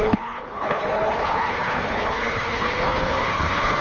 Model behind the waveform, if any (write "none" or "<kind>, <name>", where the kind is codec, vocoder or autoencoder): codec, HILCodec